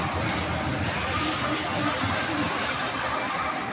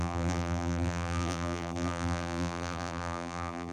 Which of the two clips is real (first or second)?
first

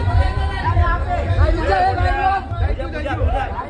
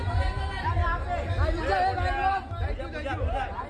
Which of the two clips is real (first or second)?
second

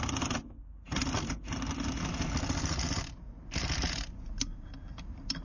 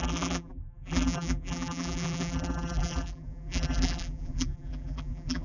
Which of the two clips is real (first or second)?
first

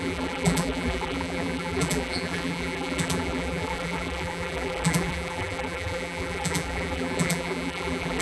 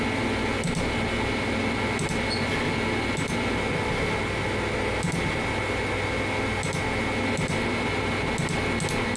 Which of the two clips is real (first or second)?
second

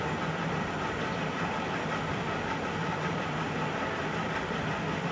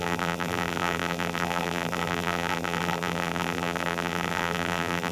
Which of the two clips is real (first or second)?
first